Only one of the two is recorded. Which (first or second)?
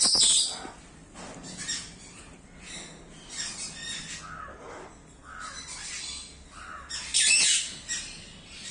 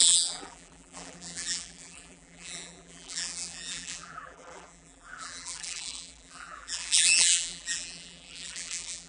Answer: first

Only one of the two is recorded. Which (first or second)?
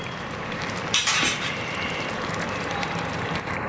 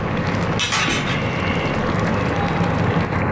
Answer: second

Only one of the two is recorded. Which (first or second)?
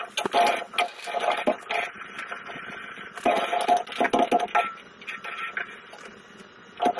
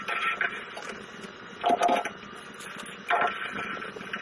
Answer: first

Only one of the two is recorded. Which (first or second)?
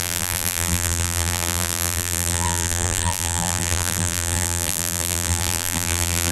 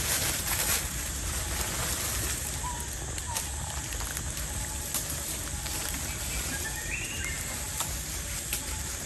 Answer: second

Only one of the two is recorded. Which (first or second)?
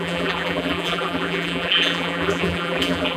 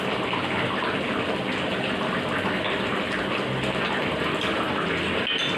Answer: second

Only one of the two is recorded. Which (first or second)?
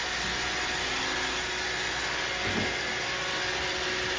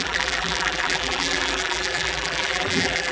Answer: first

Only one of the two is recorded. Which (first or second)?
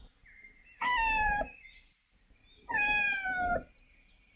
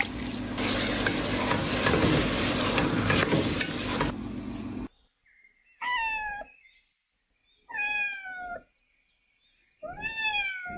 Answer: second